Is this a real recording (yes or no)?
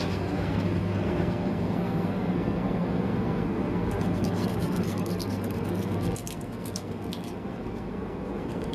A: no